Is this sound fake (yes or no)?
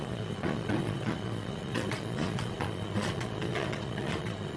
yes